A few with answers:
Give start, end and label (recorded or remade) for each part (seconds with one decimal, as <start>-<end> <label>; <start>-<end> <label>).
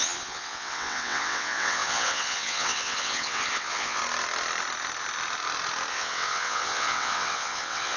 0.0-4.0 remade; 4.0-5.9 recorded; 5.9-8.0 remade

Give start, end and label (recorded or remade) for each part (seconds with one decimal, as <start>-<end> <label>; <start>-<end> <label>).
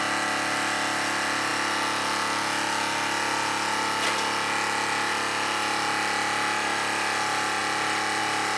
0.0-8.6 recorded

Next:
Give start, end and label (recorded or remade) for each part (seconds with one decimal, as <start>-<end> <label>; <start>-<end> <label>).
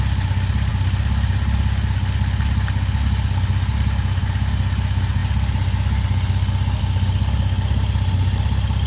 0.0-8.9 recorded